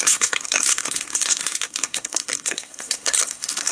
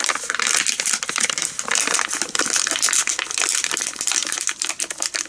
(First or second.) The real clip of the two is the second